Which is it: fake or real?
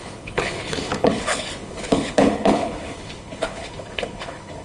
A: fake